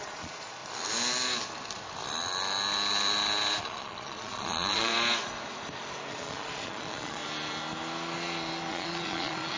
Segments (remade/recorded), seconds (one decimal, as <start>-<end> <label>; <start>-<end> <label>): 0.0-0.6 remade; 0.6-3.6 recorded; 3.6-4.9 remade; 4.9-6.1 recorded; 6.1-7.2 remade; 7.2-8.7 recorded; 8.7-9.6 remade